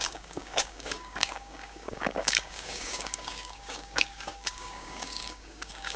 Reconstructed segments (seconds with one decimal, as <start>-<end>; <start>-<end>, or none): 0.0-6.0